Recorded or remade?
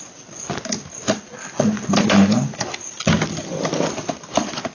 recorded